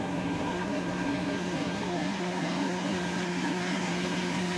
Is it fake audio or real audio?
fake